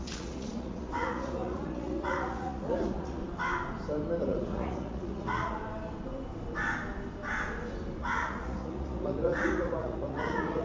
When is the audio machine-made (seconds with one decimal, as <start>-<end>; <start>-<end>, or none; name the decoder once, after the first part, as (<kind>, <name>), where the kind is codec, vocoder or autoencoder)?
0.0-3.2 (vocoder, Vocos); 4.2-5.6; 8.0-10.6